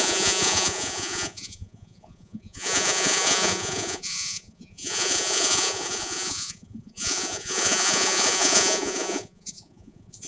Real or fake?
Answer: fake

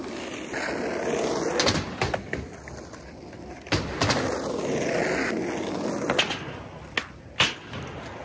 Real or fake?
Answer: real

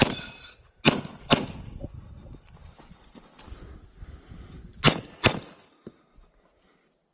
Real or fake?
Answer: real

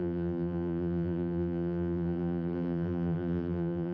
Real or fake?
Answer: fake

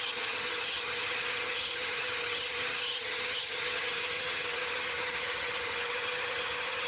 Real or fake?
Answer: fake